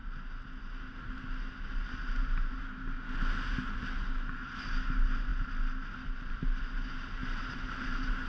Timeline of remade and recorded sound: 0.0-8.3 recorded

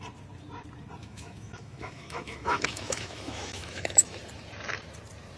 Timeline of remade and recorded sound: 0.0-1.0 recorded; 1.0-4.2 remade; 4.2-5.4 recorded

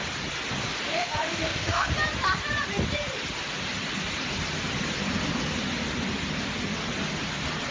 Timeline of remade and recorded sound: 0.0-0.9 recorded; 0.9-1.9 remade; 1.9-7.7 recorded

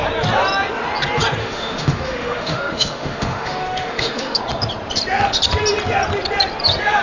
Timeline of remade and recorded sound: 0.0-1.4 recorded; 1.4-4.4 remade; 4.4-7.0 recorded

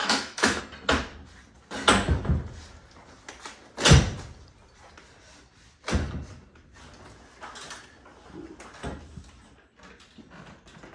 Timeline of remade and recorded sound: 0.0-0.6 remade; 0.6-10.9 recorded